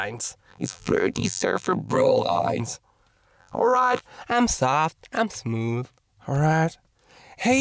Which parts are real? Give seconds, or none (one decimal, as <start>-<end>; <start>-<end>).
0.0-0.5; 2.6-3.4; 4.0-7.6